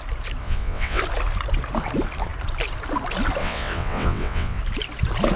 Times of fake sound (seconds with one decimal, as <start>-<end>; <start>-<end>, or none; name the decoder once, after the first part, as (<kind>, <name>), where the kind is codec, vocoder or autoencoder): 0.4-1.0 (vocoder, WaveNeXt); 3.4-4.6